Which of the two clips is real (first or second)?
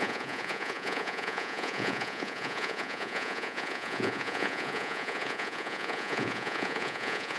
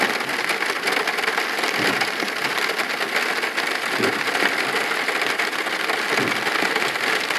second